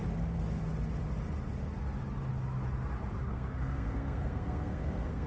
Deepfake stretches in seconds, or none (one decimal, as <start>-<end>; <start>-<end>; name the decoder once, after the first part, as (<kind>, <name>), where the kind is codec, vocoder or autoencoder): 3.3-5.3 (codec, SNAC)